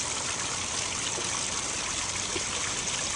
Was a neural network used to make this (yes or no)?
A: no